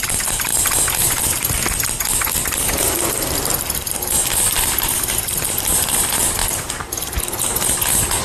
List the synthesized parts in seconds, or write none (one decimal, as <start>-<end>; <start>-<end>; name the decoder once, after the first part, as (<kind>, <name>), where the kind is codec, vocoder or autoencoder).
none